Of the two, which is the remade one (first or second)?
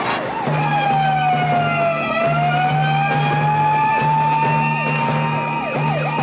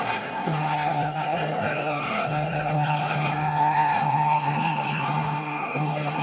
second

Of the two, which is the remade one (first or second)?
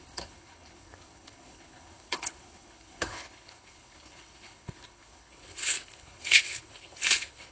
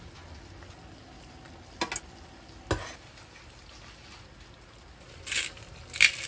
first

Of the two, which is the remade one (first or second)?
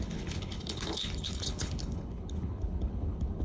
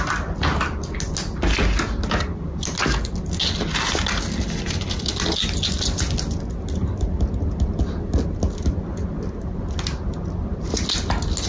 first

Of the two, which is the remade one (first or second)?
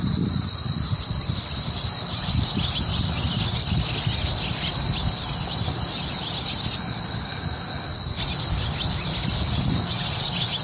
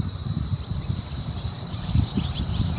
second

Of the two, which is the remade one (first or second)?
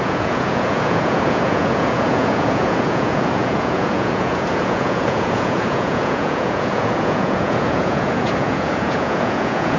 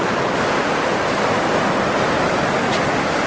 first